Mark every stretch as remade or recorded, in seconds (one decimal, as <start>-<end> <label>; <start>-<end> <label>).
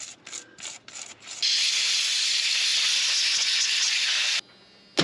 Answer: 0.0-5.0 recorded